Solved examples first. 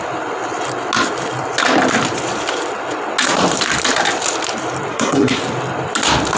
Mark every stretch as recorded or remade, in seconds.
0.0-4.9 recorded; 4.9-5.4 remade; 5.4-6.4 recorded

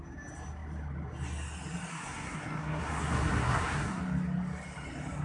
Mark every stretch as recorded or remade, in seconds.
0.0-1.9 recorded; 1.9-4.0 remade; 4.0-5.2 recorded